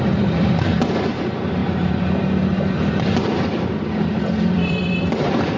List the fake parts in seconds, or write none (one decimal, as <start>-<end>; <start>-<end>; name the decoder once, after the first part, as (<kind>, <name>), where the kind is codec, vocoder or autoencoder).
4.1-5.6 (vocoder, BigVGAN v2)